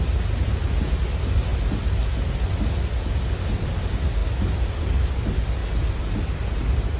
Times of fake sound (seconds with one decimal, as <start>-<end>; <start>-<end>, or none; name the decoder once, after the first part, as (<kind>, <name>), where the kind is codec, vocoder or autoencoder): none

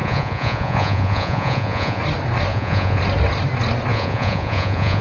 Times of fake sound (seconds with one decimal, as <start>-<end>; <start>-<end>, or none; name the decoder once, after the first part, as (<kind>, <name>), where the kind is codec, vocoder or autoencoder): 0.0-2.0 (vocoder, Vocos); 2.5-3.0; 3.9-5.0

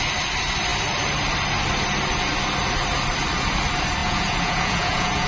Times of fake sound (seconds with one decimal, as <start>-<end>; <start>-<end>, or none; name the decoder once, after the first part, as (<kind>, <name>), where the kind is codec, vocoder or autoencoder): 4.0-5.3 (vocoder, Vocos)

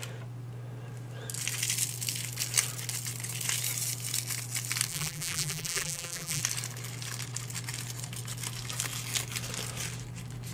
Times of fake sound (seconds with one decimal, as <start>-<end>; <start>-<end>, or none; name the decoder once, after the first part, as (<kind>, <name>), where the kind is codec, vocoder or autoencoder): 4.9-6.4 (vocoder, BigVGAN v2)

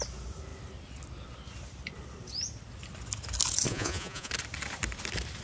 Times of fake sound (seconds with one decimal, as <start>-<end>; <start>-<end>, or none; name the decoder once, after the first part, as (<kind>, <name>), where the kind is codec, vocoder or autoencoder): 3.7-4.3 (vocoder, Vocos)

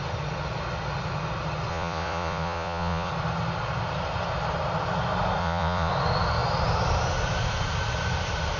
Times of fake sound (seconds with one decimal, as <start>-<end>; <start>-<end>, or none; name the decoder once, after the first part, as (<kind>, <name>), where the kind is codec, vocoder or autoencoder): 1.7-3.1 (vocoder, Vocos); 5.4-5.9

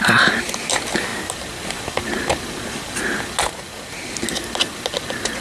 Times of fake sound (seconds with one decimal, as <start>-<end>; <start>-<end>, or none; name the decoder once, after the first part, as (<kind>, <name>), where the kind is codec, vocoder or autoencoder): none